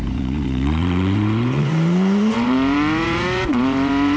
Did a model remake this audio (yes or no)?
yes